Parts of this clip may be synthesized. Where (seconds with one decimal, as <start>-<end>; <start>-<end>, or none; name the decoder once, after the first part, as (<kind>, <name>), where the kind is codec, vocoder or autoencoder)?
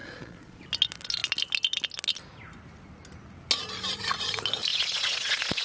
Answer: 0.0-0.6 (vocoder, Vocos); 4.7-5.6